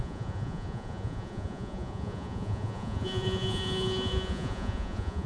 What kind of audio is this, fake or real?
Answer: fake